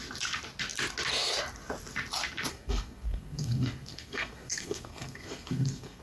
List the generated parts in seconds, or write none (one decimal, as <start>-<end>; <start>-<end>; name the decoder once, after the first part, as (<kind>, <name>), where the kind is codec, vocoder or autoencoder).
2.5-6.0 (codec, SNAC)